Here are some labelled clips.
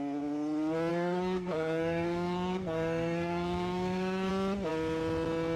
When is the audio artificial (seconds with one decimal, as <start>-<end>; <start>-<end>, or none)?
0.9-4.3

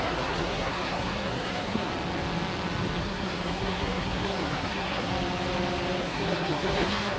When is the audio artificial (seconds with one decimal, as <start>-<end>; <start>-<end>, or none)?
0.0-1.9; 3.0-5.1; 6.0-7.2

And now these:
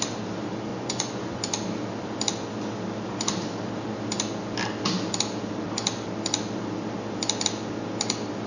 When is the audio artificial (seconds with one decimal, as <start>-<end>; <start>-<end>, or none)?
0.7-1.4

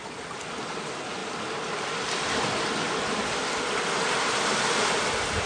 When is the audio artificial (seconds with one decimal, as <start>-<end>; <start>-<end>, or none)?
none